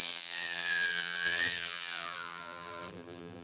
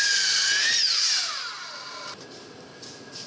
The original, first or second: second